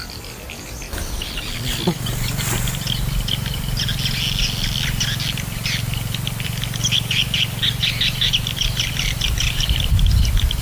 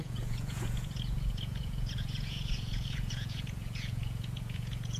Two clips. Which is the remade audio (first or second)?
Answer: second